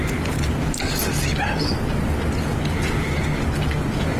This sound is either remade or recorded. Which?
recorded